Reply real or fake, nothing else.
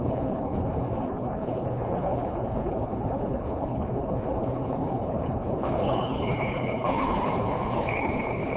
fake